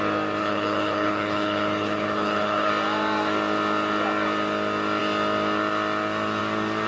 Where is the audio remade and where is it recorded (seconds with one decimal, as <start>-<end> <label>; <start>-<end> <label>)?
0.0-0.4 recorded; 0.4-2.7 remade; 2.7-6.9 recorded